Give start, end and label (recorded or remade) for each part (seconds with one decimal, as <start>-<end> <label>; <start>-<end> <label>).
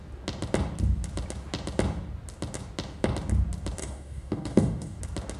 0.0-3.8 recorded; 3.8-5.0 remade; 5.0-5.4 recorded